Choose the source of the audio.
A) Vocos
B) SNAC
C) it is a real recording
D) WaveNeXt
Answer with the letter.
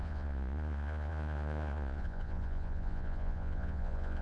A